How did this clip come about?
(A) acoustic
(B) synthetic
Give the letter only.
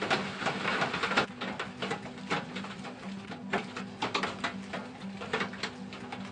A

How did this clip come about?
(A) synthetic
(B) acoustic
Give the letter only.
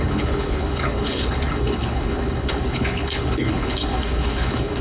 A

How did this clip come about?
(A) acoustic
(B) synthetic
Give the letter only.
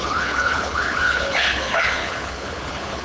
B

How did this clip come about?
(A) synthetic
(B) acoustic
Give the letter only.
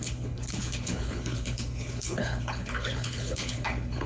A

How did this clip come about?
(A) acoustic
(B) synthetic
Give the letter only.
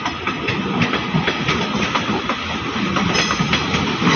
A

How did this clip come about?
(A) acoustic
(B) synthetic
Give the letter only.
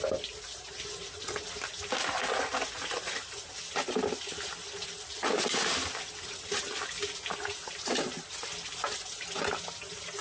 A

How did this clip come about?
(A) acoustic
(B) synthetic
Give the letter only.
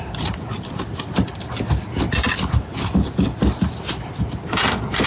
A